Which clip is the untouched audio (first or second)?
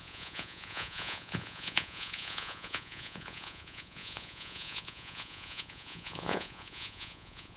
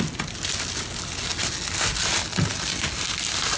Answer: second